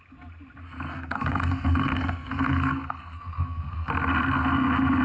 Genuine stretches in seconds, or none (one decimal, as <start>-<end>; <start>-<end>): 0.0-0.9; 3.9-5.0